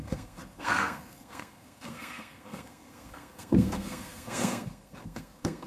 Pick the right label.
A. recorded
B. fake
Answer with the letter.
B